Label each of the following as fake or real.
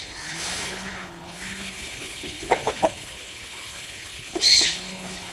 fake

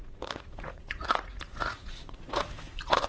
fake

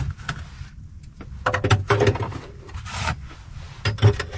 real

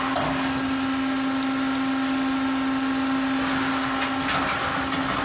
real